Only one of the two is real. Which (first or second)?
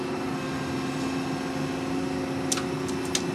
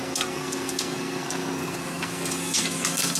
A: first